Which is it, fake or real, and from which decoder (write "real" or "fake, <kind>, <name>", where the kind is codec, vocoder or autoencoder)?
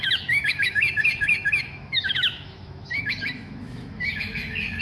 fake, autoencoder, DAC-VAE